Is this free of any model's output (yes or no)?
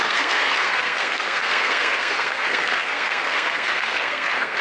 no